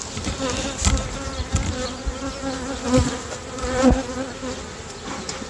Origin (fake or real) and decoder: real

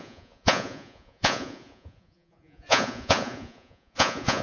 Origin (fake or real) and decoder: fake, vocoder, Vocos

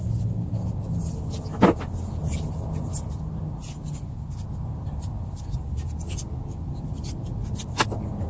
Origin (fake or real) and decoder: real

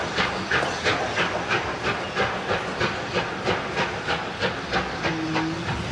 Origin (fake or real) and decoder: real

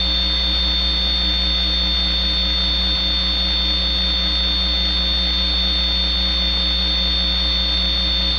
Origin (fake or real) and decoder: real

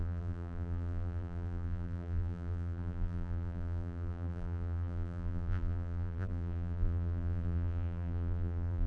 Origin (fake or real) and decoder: fake, vocoder, BigVGAN v2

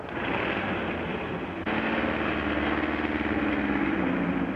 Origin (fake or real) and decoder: real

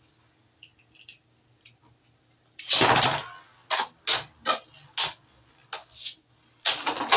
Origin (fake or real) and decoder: real